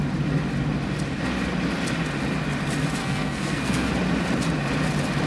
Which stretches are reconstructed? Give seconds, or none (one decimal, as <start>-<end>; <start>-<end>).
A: 3.0-3.9